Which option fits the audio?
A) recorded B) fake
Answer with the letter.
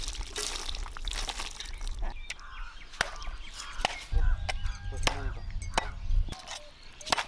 A